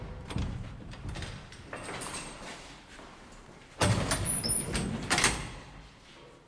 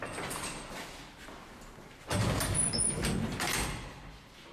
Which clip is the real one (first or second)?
second